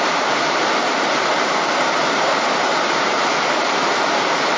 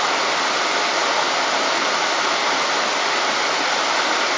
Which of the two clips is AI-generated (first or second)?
first